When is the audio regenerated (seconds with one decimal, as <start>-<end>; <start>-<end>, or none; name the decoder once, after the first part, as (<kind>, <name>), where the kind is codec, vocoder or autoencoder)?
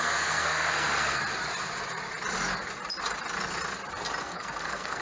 0.0-1.2 (codec, SNAC); 4.2-5.0